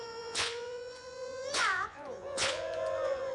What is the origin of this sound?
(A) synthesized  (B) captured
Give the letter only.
A